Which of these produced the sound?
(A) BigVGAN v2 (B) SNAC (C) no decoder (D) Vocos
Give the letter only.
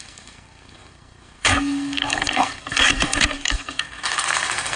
B